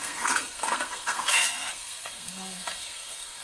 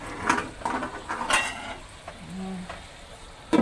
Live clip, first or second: second